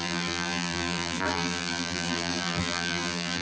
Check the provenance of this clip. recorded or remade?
remade